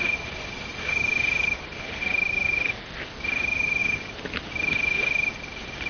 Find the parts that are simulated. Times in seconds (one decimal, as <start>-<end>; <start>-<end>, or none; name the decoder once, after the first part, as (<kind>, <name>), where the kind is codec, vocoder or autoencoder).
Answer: 0.0-0.7 (vocoder, BigVGAN v2); 2.3-3.8; 4.4-5.9